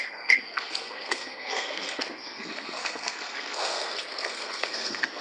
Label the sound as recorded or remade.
remade